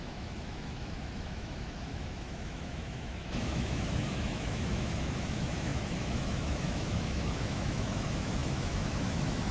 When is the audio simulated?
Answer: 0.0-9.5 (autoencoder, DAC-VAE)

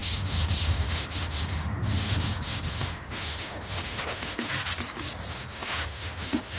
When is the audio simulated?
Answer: 0.0-4.7 (autoencoder, DAC-VAE); 5.3-6.6

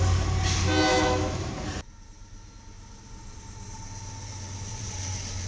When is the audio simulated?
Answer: 0.9-1.5 (autoencoder, DAC-VAE)

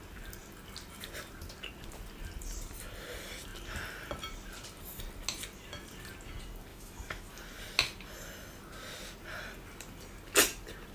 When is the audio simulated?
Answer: 6.7-7.3 (autoencoder, DAC-VAE)

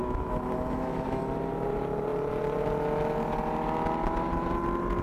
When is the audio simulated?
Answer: 0.0-1.2 (autoencoder, DAC-VAE)

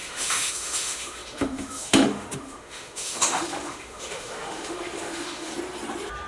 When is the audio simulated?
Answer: 0.0-5.5 (autoencoder, DAC-VAE)

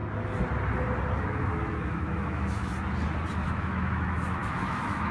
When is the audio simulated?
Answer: 1.2-2.7 (autoencoder, DAC-VAE); 3.3-5.1

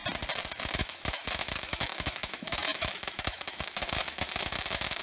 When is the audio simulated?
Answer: 0.6-5.0 (autoencoder, DAC-VAE)